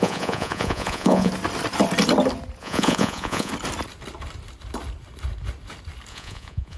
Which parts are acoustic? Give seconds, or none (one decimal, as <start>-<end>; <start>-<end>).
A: 1.3-2.6; 3.5-6.1